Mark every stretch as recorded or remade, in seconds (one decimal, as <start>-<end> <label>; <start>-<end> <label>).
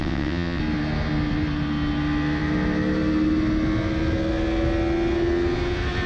0.0-0.6 remade; 0.6-6.1 recorded